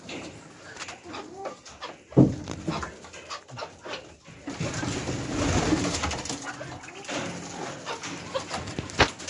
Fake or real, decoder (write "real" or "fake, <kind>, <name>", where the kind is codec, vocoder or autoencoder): real